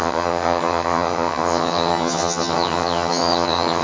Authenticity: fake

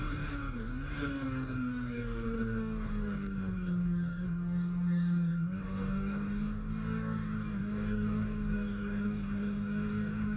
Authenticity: fake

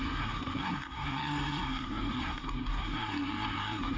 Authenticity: fake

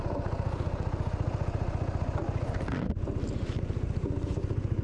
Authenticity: real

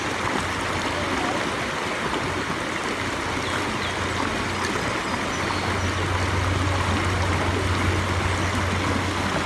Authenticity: real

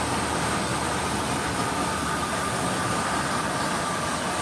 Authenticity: real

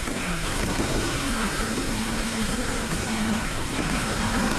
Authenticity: fake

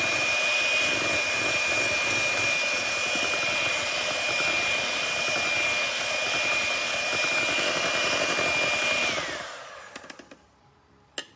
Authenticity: real